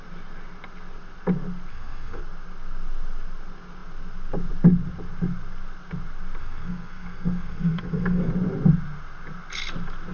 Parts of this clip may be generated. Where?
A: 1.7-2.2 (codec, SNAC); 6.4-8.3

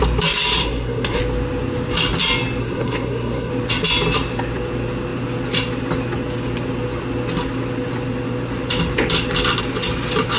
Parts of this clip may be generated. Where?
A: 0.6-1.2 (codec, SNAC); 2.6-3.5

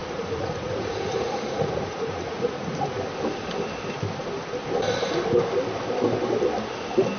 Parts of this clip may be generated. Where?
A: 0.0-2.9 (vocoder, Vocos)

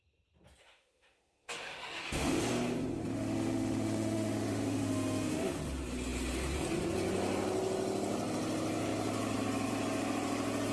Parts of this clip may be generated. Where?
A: 0.6-2.4 (autoencoder, DAC-VAE); 3.1-5.6